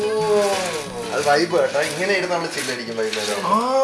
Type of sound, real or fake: real